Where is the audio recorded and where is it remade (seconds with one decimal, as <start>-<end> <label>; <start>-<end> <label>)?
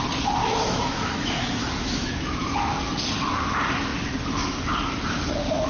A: 0.0-0.4 recorded; 0.4-2.8 remade; 2.8-5.7 recorded